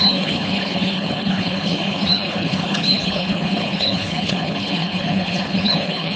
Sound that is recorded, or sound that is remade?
remade